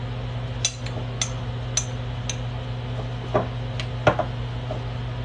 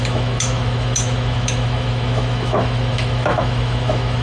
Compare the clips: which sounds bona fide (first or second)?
first